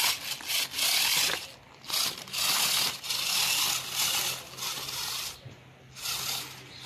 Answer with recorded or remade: recorded